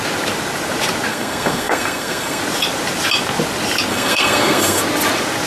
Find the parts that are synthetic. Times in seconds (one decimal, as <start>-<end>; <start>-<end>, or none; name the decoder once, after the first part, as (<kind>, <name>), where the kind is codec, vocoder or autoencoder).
1.1-2.4 (codec, SNAC); 3.9-4.8